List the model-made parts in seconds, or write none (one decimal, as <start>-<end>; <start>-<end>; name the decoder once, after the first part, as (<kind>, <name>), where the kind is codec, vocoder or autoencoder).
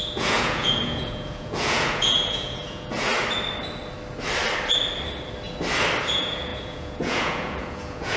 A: 0.0-3.1 (vocoder, Vocos); 6.1-8.2